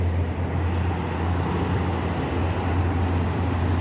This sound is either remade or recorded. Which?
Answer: recorded